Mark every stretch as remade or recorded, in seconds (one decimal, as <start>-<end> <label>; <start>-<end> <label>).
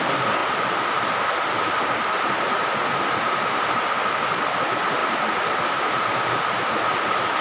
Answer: 0.0-5.0 recorded; 5.0-5.5 remade; 5.5-7.4 recorded